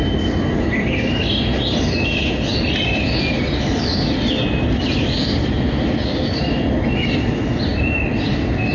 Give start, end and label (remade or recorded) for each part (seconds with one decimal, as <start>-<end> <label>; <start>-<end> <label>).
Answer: 0.0-8.7 recorded